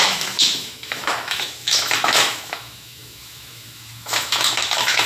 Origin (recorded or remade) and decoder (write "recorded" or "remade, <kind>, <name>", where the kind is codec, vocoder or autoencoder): remade, autoencoder, DAC-VAE